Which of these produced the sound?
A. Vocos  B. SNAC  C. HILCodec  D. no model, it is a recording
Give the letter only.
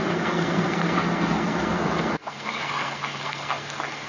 B